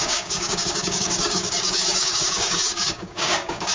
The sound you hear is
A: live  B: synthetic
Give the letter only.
B